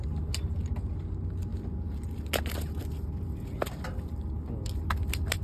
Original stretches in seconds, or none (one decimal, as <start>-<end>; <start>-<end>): 0.0-5.4